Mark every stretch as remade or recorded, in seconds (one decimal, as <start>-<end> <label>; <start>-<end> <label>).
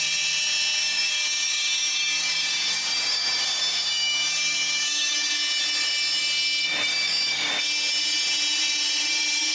0.0-0.8 recorded; 0.8-5.3 remade; 5.3-6.9 recorded; 6.9-7.5 remade; 7.5-9.5 recorded